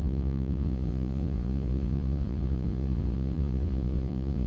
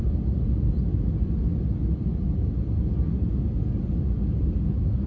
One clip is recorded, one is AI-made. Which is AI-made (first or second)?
first